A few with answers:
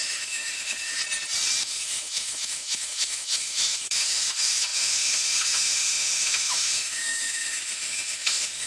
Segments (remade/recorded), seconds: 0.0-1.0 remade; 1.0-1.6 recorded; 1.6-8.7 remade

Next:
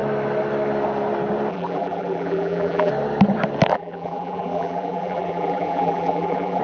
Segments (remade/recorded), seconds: 0.0-1.5 recorded; 1.5-2.9 remade; 2.9-3.7 recorded; 3.7-6.6 remade

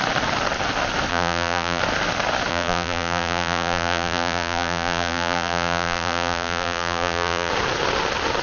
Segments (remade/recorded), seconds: 0.0-1.1 recorded; 1.1-1.8 remade; 1.8-2.5 recorded; 2.5-7.5 remade; 7.5-8.4 recorded

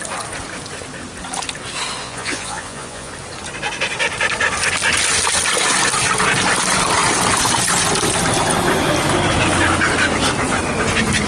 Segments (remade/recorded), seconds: 0.0-2.0 recorded; 2.0-3.1 remade; 3.1-11.3 recorded

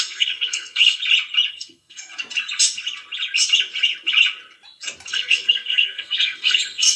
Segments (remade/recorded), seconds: 0.0-1.0 remade; 1.0-1.5 recorded; 1.5-2.1 remade; 2.1-5.1 recorded; 5.1-7.0 remade

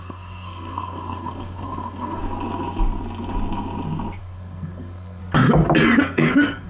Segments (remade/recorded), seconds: 0.0-2.2 remade; 2.2-4.2 recorded; 4.2-5.2 remade; 5.2-6.0 recorded; 6.0-6.7 remade

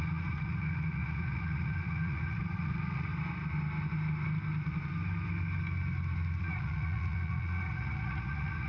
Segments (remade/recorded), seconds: 0.0-3.1 remade; 3.1-6.4 recorded; 6.4-8.7 remade

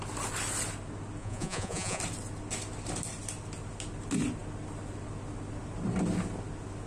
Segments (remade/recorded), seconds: 0.0-1.2 recorded; 1.2-2.0 remade; 2.0-6.9 recorded